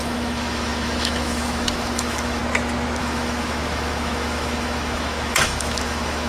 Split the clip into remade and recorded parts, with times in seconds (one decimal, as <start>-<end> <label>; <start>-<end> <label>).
0.0-2.4 remade; 2.4-3.0 recorded; 3.0-6.3 remade